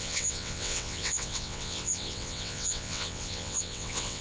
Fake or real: fake